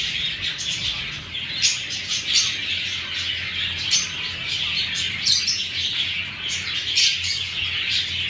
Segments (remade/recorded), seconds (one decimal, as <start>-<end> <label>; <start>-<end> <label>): 0.0-8.3 recorded